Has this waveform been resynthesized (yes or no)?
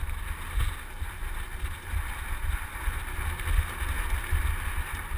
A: no